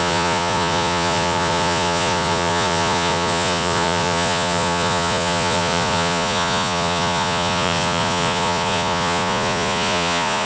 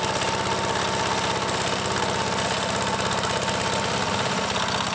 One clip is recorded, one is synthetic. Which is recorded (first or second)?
second